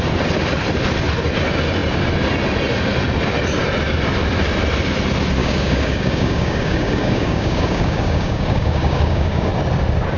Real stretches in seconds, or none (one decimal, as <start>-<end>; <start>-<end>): 0.0-5.4; 9.5-10.2